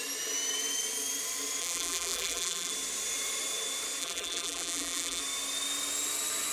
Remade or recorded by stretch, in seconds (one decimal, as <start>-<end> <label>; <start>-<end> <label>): 0.0-1.6 recorded; 1.6-2.7 remade; 2.7-4.0 recorded; 4.0-5.2 remade; 5.2-6.5 recorded